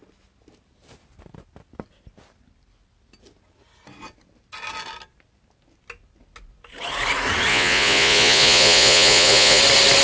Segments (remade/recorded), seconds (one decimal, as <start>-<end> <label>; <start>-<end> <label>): 0.0-7.5 recorded; 7.5-9.6 remade; 9.6-10.0 recorded